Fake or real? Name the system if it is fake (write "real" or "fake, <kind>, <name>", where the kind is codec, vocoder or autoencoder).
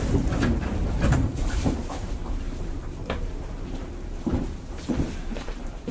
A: fake, vocoder, BigVGAN v2